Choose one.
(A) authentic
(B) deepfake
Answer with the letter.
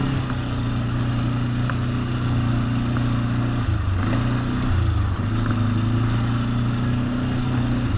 A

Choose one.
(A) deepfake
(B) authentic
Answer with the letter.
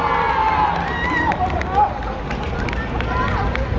B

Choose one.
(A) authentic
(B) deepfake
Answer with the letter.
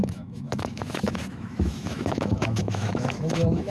B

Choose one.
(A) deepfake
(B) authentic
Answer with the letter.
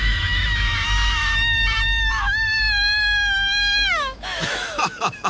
A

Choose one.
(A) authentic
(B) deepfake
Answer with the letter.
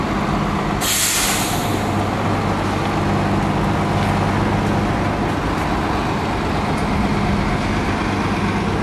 A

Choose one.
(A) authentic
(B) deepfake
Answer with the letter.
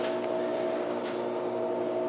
A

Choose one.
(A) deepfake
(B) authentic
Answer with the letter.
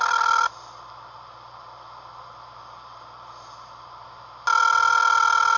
B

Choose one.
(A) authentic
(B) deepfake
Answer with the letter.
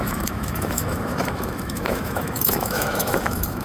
B